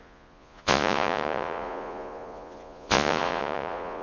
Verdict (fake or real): fake